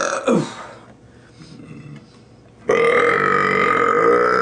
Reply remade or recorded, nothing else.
recorded